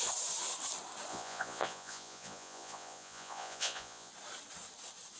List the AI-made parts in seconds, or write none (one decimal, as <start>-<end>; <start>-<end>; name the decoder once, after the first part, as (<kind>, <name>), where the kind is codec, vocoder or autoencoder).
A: 1.1-4.1 (vocoder, Vocos)

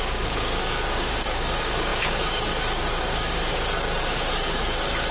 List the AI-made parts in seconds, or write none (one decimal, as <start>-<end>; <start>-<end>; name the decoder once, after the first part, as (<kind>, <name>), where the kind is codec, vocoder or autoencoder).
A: 0.0-5.1 (codec, DAC)

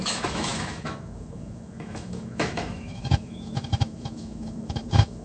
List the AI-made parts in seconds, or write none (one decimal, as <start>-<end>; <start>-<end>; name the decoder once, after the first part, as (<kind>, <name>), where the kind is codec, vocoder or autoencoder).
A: 0.0-5.2 (autoencoder, DAC-VAE)

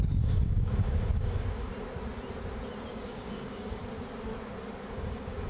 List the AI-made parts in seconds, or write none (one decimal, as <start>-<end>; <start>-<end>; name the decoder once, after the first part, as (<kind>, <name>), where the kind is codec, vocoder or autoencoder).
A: 0.0-1.7 (codec, DAC); 2.9-3.8; 4.9-5.5